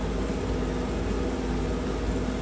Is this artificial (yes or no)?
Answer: no